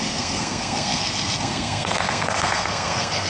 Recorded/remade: remade